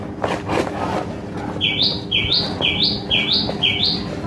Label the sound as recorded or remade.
recorded